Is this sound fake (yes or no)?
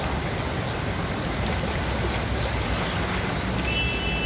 no